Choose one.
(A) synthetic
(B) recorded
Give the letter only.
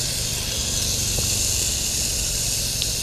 B